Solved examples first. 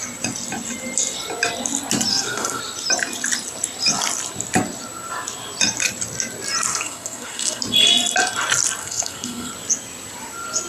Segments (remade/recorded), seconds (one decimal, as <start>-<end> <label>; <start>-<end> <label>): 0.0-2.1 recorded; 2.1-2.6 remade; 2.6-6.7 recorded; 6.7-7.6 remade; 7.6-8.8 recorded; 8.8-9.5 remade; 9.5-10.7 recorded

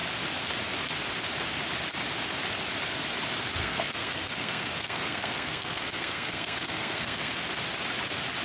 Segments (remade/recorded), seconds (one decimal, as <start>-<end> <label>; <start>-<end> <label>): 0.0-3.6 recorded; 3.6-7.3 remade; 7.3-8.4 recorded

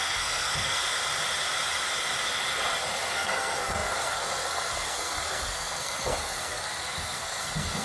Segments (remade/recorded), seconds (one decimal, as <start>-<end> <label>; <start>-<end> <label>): 0.0-0.8 remade; 0.8-3.1 recorded; 3.1-7.8 remade

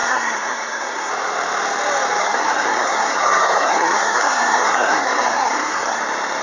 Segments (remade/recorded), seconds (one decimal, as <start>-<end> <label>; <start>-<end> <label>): 0.0-1.1 remade; 1.1-2.2 recorded; 2.2-6.0 remade; 6.0-6.4 recorded

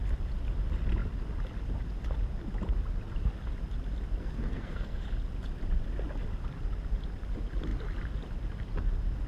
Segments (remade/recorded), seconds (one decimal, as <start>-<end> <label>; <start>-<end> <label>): 0.0-4.2 recorded; 4.2-5.0 remade; 5.0-9.3 recorded

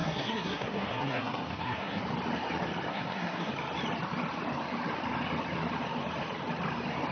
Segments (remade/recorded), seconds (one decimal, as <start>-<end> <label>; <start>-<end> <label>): 0.0-2.0 remade; 2.0-2.9 recorded; 2.9-3.5 remade; 3.5-7.1 recorded

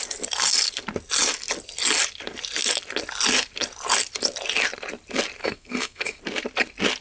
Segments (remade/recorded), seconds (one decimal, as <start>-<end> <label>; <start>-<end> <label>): 0.0-5.4 recorded; 5.4-6.2 remade; 6.2-7.0 recorded